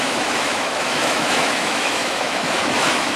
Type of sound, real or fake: fake